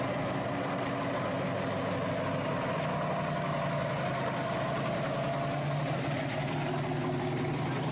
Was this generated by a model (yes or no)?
no